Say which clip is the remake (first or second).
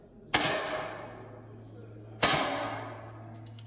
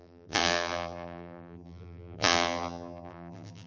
second